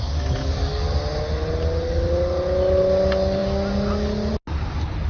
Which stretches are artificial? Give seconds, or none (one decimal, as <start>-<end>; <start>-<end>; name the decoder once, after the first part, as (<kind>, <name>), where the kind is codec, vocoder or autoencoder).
none